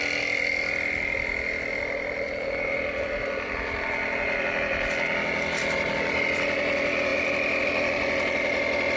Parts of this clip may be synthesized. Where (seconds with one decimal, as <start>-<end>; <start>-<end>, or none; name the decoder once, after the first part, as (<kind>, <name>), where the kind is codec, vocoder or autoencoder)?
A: none